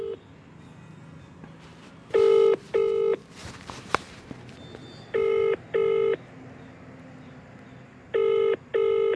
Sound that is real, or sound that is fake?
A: real